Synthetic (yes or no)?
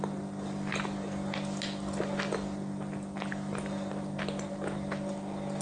no